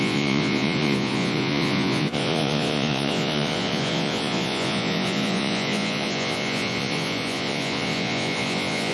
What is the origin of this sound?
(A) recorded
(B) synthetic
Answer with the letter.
B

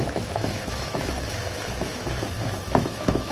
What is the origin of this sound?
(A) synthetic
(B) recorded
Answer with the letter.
A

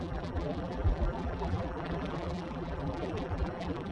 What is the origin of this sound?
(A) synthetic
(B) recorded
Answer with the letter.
A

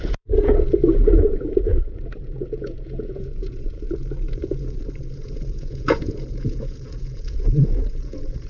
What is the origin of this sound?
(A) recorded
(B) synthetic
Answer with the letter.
B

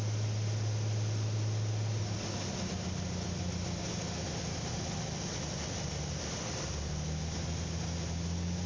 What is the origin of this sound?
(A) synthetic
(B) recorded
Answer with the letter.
B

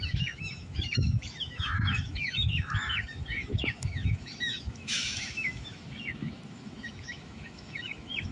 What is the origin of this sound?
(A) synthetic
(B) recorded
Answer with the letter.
A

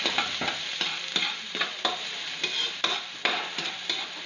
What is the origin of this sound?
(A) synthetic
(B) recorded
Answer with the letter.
B